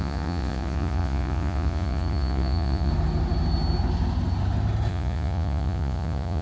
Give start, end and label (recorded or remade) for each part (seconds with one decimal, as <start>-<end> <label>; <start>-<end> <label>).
0.0-2.9 remade; 2.9-4.9 recorded; 4.9-6.4 remade